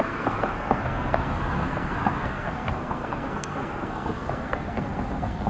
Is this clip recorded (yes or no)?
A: no